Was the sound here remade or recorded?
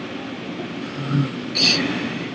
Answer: recorded